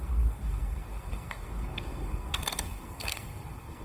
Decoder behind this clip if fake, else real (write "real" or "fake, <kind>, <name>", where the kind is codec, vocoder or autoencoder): fake, codec, SNAC